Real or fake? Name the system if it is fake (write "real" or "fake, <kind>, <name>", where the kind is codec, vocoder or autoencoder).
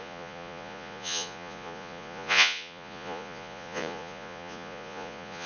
fake, vocoder, Vocos